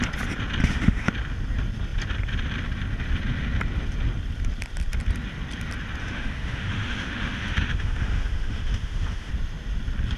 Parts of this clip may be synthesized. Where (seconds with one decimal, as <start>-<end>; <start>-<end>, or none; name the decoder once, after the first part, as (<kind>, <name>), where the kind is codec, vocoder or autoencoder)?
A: 0.6-1.1 (autoencoder, DAC-VAE); 6.0-9.3